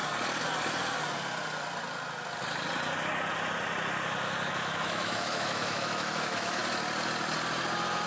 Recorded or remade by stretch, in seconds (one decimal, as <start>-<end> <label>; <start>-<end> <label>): 0.0-4.5 recorded; 4.5-6.6 remade; 6.6-8.1 recorded